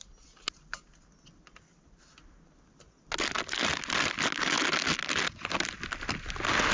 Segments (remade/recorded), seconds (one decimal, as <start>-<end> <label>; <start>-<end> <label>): 0.0-6.7 recorded